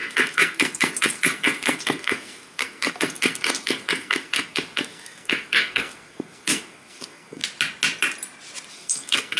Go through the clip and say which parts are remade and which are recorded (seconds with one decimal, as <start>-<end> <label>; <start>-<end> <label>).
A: 0.0-7.4 remade; 7.4-8.7 recorded; 8.7-9.4 remade